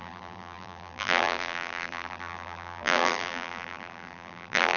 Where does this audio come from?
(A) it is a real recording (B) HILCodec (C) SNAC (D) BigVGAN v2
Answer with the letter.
D